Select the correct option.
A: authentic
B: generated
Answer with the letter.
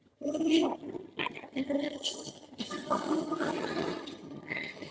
B